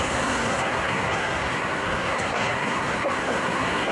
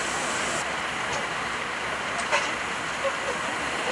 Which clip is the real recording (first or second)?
second